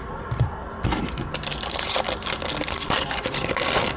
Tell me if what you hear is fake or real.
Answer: real